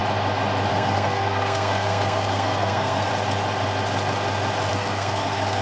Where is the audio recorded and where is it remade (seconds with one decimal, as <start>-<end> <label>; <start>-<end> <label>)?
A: 0.0-0.7 recorded; 0.7-3.1 remade; 3.1-4.7 recorded; 4.7-5.6 remade